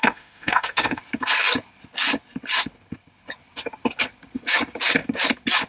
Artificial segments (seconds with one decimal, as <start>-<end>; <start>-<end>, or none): 0.0-1.0